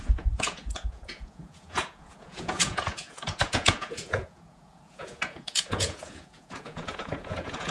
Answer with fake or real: fake